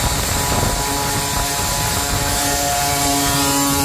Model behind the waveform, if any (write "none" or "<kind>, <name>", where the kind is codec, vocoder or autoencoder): none